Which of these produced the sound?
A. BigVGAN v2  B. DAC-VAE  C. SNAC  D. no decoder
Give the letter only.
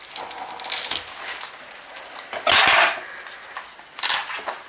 D